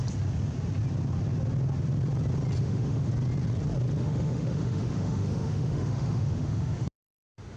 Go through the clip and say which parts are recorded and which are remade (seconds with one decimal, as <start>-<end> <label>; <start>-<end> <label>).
0.0-2.6 recorded; 2.6-3.1 remade; 3.1-4.0 recorded; 4.0-7.6 remade